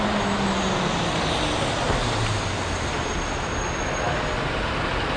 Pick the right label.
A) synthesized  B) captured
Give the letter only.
B